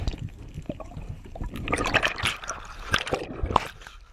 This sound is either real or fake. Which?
real